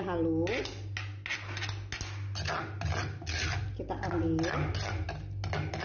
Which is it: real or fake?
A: real